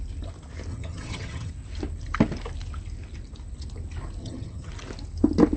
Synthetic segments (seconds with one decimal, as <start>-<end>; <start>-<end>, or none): 0.7-1.5; 4.2-4.7